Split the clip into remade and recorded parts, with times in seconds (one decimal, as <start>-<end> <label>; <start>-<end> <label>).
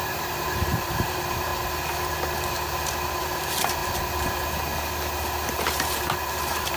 0.0-1.5 remade; 1.5-3.2 recorded; 3.2-3.8 remade; 3.8-5.5 recorded; 5.5-6.8 remade